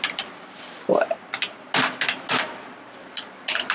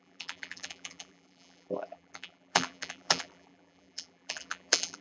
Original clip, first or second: first